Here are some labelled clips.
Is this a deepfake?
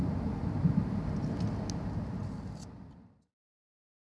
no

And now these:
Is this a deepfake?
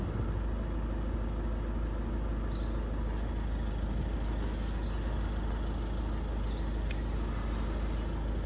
no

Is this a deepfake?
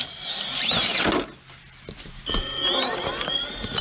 no